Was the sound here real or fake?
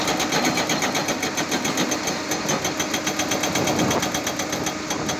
real